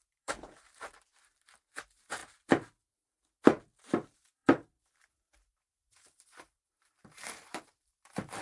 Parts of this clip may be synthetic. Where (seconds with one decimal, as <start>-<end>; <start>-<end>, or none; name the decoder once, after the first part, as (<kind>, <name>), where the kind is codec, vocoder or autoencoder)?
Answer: 0.0-2.2 (vocoder, BigVGAN v2); 3.8-8.4